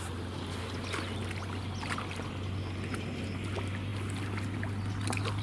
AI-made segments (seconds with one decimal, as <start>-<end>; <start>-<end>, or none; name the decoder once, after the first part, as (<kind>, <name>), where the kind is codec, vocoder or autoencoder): none